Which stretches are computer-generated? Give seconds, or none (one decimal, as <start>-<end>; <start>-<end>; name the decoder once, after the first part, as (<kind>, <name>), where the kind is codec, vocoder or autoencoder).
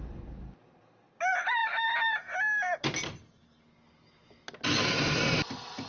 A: none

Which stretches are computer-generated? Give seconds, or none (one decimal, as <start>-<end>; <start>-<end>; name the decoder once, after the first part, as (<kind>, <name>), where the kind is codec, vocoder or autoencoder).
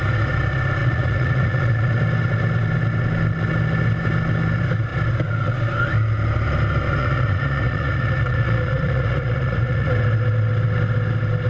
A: 0.8-1.8 (vocoder, Vocos); 7.0-9.9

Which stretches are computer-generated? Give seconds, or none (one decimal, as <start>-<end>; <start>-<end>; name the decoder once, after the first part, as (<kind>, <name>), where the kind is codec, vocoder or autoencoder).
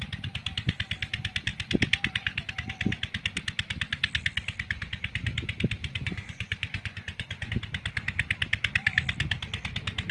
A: 5.8-7.5 (vocoder, Vocos)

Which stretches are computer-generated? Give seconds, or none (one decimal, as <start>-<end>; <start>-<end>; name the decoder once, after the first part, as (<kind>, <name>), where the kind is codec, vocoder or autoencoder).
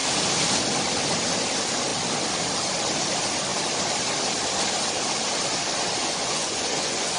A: 6.0-7.2 (vocoder, Vocos)